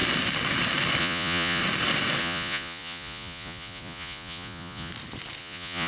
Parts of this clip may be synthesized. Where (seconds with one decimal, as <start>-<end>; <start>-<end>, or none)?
1.0-1.6; 2.2-4.9; 5.4-5.9